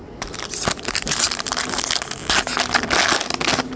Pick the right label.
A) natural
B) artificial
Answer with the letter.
A